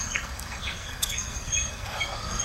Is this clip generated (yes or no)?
yes